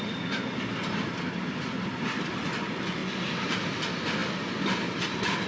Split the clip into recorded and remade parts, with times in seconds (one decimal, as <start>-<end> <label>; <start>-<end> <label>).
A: 0.0-5.5 recorded